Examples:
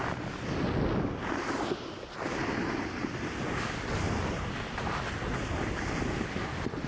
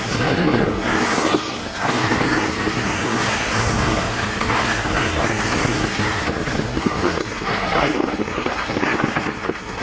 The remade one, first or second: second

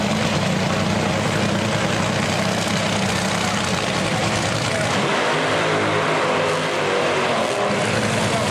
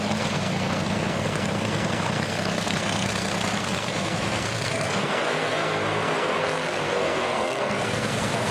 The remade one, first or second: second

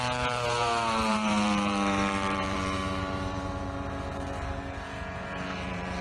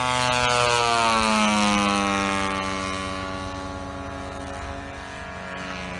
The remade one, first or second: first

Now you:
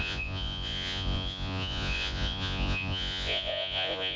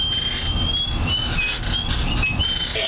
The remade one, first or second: first